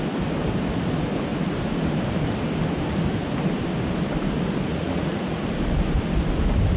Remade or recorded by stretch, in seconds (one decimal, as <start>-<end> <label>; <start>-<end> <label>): 0.0-4.7 recorded; 4.7-5.4 remade; 5.4-6.8 recorded